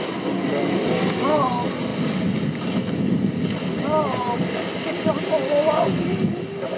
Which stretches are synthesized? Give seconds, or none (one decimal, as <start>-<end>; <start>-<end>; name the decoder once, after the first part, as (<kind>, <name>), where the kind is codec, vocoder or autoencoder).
none